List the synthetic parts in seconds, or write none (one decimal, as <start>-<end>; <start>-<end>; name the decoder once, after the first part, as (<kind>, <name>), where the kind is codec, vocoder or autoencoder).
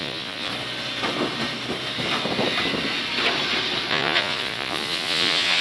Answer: 0.0-0.5 (vocoder, Vocos); 3.9-5.6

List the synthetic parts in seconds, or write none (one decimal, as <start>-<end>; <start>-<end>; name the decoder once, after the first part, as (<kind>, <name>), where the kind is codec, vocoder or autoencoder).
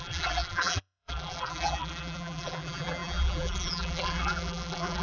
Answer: 0.0-5.0 (vocoder, BigVGAN v2)